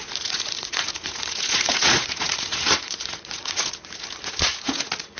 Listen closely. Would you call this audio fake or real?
fake